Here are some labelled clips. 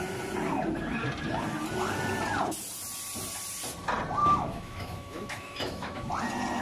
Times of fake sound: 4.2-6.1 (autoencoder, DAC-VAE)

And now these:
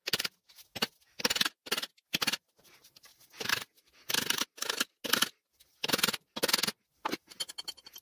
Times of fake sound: none

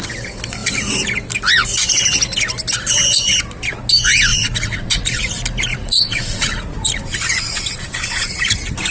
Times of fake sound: 4.3-5.2 (vocoder, Vocos); 5.7-8.4

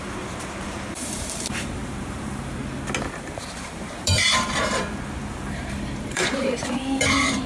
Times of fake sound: 0.0-2.6 (vocoder, BigVGAN v2); 3.6-7.5